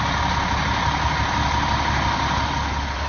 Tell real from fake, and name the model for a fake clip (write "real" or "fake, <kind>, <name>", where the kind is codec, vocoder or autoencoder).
real